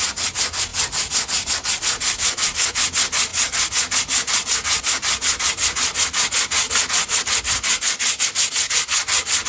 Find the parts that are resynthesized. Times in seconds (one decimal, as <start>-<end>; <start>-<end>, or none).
none